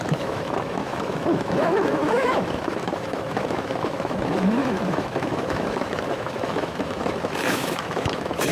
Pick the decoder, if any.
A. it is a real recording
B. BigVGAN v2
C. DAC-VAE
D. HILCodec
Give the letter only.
C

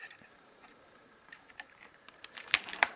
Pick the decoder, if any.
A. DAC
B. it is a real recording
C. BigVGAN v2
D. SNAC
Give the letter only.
C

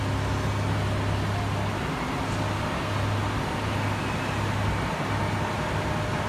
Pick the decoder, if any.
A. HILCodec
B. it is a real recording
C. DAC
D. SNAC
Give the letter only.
B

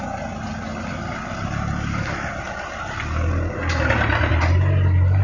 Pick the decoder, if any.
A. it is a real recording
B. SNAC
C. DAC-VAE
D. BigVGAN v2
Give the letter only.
A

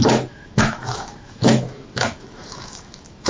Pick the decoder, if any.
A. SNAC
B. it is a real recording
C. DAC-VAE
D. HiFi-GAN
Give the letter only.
C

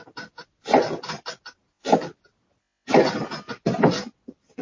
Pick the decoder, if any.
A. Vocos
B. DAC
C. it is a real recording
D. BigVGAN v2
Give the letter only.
C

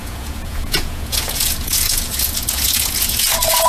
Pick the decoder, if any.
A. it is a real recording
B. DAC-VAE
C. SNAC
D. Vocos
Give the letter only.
D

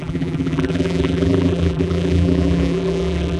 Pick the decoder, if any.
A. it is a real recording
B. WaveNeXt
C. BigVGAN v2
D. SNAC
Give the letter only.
C